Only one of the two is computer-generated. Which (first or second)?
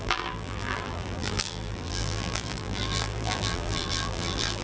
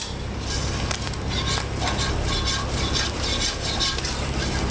first